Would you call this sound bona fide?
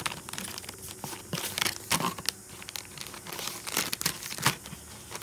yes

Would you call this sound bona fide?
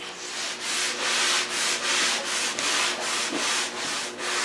yes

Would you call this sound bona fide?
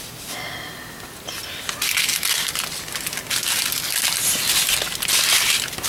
yes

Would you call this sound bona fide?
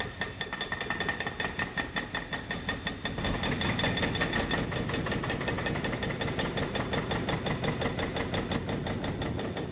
yes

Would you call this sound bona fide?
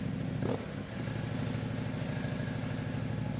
yes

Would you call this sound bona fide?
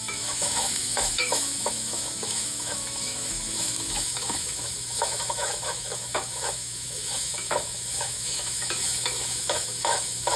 no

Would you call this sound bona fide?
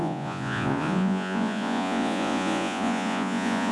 no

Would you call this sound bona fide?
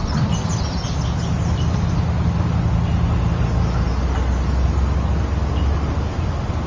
yes